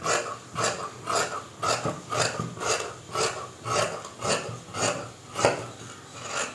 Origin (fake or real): real